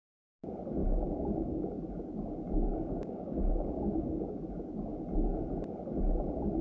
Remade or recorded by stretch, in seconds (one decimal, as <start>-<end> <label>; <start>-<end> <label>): 0.0-0.8 recorded; 0.8-1.8 remade; 1.8-2.7 recorded; 2.7-4.4 remade; 4.4-6.6 recorded